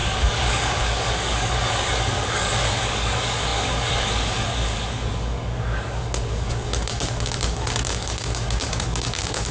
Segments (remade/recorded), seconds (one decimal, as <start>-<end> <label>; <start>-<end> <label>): 0.0-9.5 remade